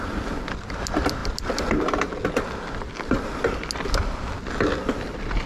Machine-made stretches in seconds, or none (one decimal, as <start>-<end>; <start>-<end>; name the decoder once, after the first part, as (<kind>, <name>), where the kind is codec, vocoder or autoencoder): none